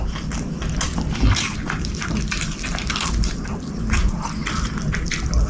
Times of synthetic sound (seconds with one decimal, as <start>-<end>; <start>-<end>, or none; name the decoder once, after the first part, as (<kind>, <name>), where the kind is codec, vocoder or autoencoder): none